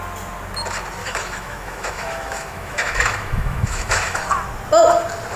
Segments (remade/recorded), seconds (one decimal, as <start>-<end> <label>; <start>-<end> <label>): 0.0-1.0 recorded; 1.0-4.2 remade; 4.2-5.4 recorded